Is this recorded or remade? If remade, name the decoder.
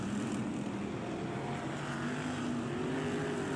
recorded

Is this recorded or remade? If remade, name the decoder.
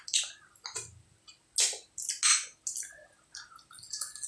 recorded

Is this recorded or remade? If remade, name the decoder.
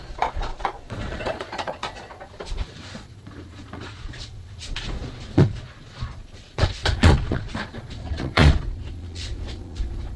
remade, vocoder, Vocos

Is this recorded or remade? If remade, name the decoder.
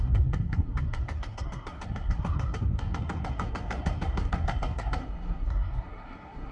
remade, codec, SNAC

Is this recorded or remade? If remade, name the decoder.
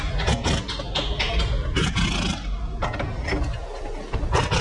recorded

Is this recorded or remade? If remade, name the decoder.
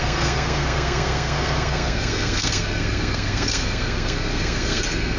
remade, codec, SNAC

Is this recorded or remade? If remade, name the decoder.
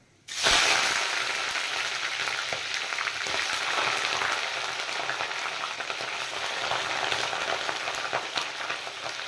recorded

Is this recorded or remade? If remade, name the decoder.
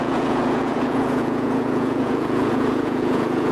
remade, vocoder, Vocos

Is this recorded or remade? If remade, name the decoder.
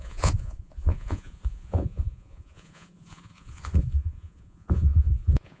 remade, vocoder, Vocos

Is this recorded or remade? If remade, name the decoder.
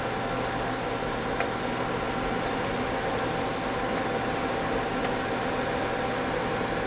recorded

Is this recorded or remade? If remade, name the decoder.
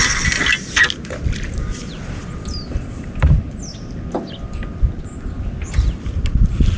recorded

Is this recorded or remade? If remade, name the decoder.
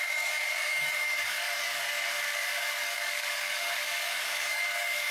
remade, codec, DAC